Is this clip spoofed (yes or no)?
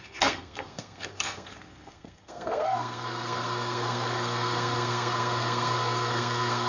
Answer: yes